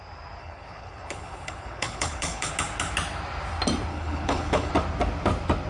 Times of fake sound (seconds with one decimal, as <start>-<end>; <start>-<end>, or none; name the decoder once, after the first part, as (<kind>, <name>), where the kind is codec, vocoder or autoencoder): 0.4-2.5 (codec, HILCodec); 3.9-4.7